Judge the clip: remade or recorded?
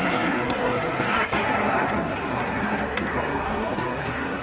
remade